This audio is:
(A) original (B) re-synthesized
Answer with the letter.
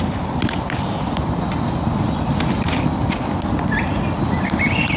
A